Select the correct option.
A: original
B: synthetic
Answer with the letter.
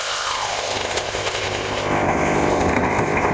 B